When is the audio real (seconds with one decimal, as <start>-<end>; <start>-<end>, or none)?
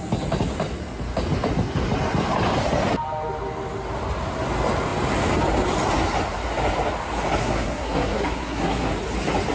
0.0-7.4; 8.9-9.5